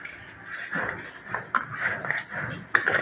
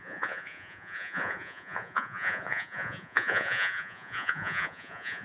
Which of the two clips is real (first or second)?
first